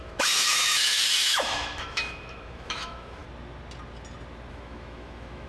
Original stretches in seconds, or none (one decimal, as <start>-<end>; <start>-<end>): 3.2-4.5